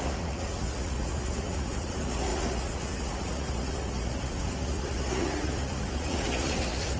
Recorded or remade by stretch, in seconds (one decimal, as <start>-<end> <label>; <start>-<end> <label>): 0.0-7.0 remade